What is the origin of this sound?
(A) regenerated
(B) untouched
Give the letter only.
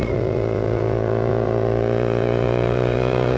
A